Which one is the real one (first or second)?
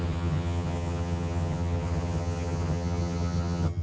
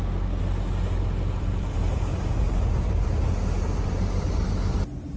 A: second